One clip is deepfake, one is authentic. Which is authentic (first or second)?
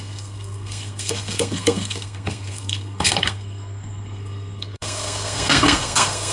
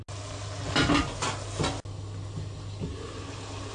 second